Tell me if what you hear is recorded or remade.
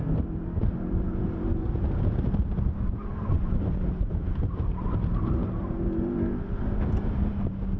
remade